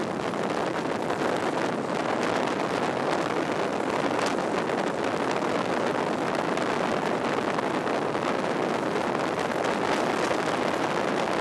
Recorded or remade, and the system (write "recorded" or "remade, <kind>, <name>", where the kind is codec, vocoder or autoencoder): recorded